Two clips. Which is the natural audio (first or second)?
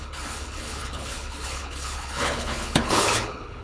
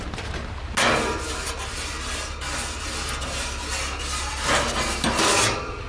second